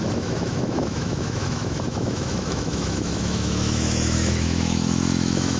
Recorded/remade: remade